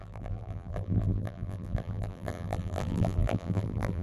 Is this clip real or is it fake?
fake